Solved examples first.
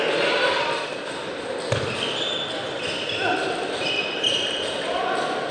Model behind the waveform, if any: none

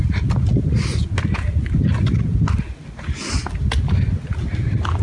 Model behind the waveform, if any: none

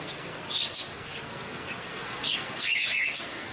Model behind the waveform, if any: codec, SNAC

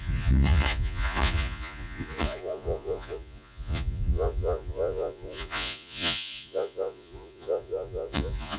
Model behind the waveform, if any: vocoder, Vocos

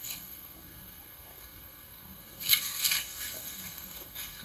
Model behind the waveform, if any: codec, SNAC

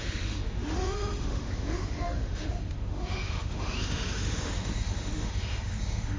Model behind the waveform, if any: autoencoder, DAC-VAE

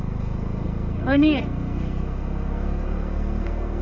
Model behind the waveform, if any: codec, SNAC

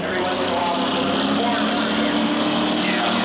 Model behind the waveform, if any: none